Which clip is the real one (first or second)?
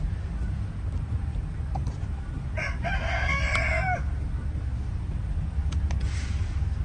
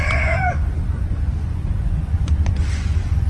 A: first